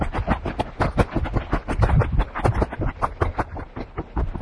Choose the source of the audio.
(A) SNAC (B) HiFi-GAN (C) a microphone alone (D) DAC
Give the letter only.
C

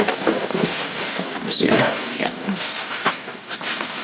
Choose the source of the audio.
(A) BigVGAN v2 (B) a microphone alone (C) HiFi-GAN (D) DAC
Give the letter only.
D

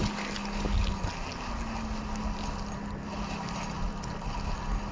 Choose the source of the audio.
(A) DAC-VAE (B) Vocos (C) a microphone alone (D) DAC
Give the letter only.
C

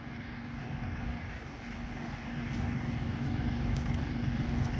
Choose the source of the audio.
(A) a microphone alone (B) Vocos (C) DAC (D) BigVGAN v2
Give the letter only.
C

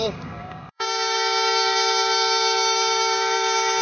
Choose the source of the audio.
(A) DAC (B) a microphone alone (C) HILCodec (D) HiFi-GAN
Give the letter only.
A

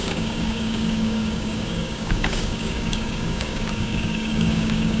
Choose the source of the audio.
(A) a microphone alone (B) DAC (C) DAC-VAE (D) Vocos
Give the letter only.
B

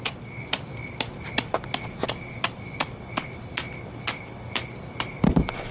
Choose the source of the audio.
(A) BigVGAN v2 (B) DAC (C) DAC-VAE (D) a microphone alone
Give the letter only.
D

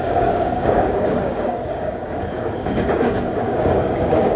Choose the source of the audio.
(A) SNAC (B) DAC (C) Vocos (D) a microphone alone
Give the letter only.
B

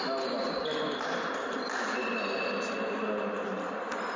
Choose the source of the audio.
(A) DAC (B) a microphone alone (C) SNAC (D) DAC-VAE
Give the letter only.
B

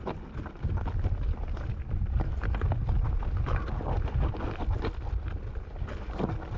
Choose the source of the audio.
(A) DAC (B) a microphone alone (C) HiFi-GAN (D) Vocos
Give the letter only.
B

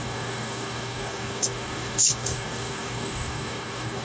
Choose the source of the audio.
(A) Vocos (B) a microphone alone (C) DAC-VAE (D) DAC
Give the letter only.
D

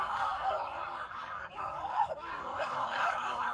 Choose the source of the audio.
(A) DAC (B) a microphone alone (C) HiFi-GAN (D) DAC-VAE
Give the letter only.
A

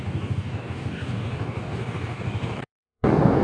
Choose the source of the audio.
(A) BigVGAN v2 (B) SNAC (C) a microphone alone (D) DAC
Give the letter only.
D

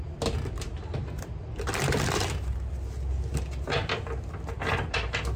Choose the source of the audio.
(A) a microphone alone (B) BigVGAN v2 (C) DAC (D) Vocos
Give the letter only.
A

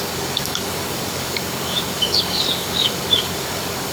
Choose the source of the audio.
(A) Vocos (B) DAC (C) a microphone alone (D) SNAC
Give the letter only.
B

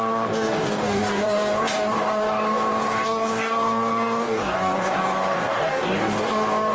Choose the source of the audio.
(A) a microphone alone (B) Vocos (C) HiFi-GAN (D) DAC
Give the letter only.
D